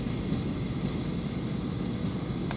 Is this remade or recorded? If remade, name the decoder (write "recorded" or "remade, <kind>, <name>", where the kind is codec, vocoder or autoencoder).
recorded